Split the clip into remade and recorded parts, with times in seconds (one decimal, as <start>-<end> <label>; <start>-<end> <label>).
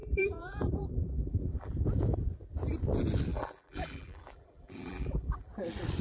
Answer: 0.0-1.7 remade; 1.7-3.3 recorded; 3.3-5.5 remade; 5.5-6.0 recorded